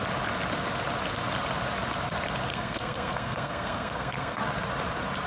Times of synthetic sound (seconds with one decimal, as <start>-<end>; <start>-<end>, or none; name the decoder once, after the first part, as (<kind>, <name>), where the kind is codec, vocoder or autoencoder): 2.5-4.4 (codec, SNAC)